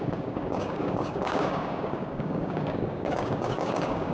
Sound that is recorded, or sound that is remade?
remade